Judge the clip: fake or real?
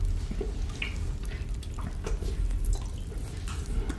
real